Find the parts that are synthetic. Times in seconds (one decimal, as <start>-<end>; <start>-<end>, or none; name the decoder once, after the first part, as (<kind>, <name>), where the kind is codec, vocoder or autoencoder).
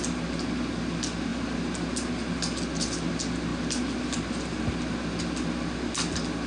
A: none